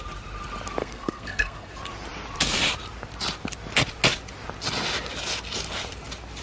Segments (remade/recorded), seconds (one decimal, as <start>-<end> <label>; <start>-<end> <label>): 0.0-0.8 recorded; 0.8-1.7 remade; 1.7-6.4 recorded